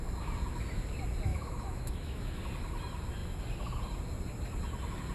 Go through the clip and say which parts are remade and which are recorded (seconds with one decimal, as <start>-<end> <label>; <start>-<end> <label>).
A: 0.0-1.3 recorded; 1.3-2.4 remade; 2.4-5.1 recorded